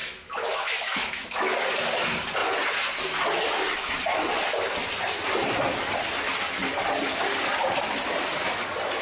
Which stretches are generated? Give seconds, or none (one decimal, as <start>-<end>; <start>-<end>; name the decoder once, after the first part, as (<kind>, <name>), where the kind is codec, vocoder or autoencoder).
0.0-1.5 (autoencoder, DAC-VAE)